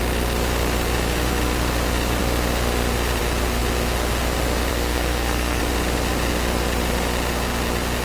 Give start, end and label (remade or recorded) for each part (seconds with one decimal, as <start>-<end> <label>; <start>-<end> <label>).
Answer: 0.0-4.7 recorded; 4.7-5.6 remade; 5.6-8.0 recorded